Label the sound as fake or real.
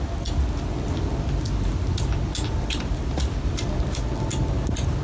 real